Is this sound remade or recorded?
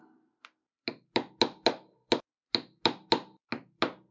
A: recorded